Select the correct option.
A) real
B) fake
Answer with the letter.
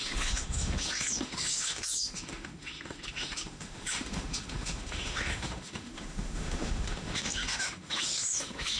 B